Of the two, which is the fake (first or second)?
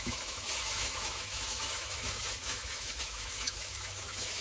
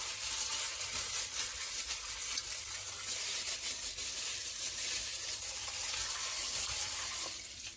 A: first